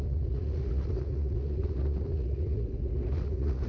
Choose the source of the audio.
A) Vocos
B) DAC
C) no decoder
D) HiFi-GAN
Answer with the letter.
A